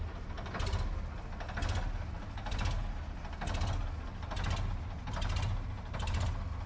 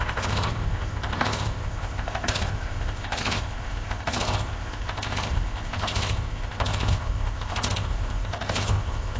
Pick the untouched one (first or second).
first